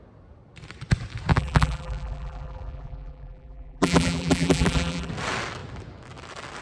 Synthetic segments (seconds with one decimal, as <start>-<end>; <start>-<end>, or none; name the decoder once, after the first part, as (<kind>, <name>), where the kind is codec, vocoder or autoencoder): 1.3-5.1 (vocoder, BigVGAN v2)